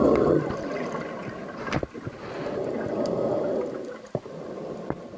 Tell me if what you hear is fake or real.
real